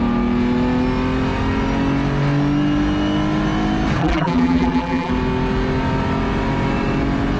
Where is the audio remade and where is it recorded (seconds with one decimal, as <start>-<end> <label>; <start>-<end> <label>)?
0.0-4.0 recorded; 4.0-5.1 remade; 5.1-7.4 recorded

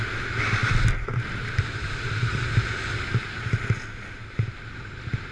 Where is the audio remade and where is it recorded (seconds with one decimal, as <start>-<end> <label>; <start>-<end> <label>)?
0.0-5.3 recorded

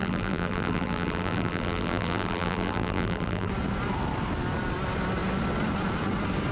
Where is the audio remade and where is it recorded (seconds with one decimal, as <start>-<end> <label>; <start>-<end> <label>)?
0.0-3.5 remade; 3.5-6.5 recorded

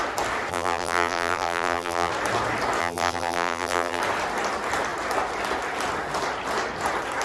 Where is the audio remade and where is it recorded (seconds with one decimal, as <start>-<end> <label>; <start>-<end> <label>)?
0.0-0.5 recorded; 0.5-2.1 remade; 2.1-2.8 recorded; 2.8-4.0 remade; 4.0-7.2 recorded

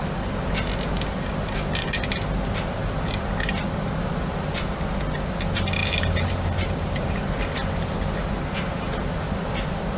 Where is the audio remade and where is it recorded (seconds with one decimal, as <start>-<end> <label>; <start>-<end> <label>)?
0.0-5.8 recorded; 5.8-7.2 remade; 7.2-10.0 recorded